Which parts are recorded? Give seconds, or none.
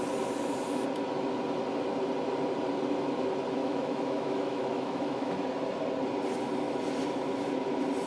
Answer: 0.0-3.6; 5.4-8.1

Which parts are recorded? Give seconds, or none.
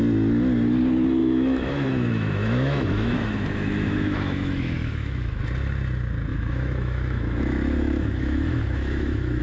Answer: 0.0-1.2; 5.4-6.3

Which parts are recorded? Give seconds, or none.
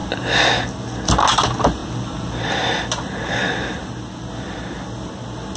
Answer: 0.0-5.6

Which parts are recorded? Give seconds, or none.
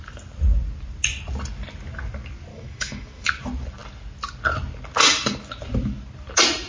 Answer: 0.0-2.5; 3.3-6.7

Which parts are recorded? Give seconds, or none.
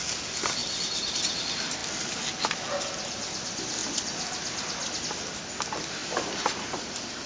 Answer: 0.0-7.3